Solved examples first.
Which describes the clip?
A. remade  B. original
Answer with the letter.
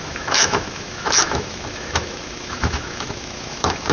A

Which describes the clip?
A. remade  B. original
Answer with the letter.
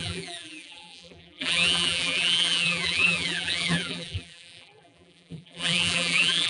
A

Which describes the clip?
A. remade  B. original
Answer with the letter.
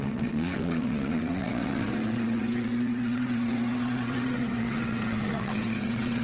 A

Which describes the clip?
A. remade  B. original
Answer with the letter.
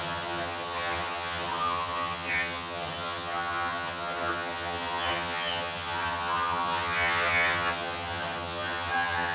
A